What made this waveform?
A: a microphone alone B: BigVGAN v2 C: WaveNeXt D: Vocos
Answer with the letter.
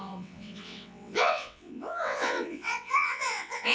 C